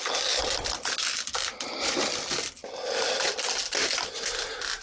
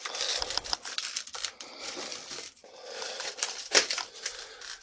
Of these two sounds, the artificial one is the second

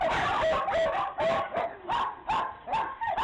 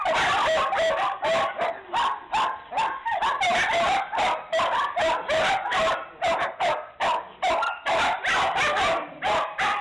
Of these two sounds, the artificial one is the first